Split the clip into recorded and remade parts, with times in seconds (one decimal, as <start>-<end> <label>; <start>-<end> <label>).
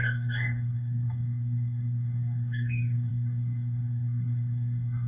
0.0-5.1 remade